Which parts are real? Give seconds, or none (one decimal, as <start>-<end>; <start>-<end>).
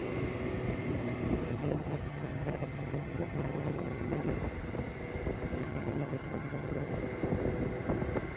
0.0-1.5; 4.3-5.6; 6.9-8.4